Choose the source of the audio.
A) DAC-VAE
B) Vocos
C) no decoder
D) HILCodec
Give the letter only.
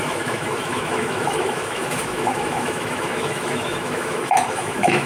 A